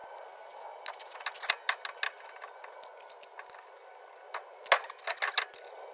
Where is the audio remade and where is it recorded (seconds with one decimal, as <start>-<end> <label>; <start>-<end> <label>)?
0.0-5.9 recorded